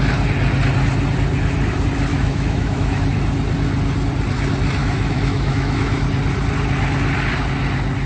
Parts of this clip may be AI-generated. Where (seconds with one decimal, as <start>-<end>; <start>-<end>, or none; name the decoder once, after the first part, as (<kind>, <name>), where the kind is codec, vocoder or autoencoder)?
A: 2.1-3.0 (autoencoder, DAC-VAE); 4.8-6.0